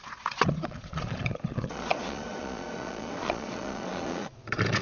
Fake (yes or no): yes